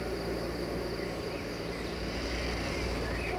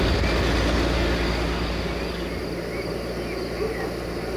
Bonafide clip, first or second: second